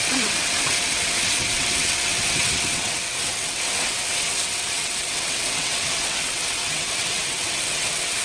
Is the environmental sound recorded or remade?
remade